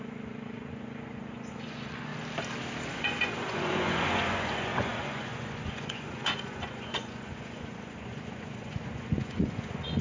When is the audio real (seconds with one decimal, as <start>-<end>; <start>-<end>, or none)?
2.1-2.9

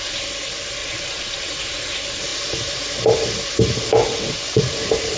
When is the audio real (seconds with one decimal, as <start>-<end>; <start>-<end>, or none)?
0.0-0.8; 1.5-4.0; 4.6-5.2

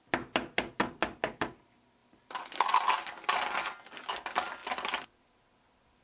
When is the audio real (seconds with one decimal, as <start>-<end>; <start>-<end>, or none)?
0.0-6.0

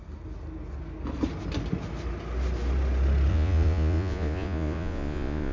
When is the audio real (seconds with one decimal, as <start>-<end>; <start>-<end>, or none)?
0.0-3.3

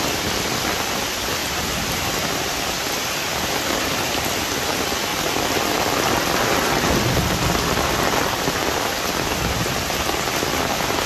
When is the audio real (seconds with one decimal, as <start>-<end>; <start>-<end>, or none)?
0.0-1.4; 2.1-3.3; 4.1-11.1

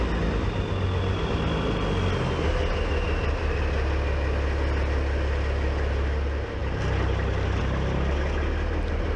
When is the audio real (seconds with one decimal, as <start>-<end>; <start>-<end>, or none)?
0.0-9.2

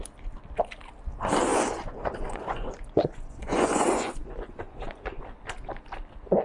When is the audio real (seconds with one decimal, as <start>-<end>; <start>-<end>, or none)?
0.0-1.5; 5.2-6.4

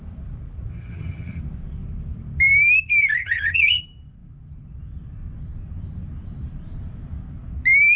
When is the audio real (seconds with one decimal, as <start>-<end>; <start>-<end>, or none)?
0.0-0.7; 1.4-3.2; 3.8-8.0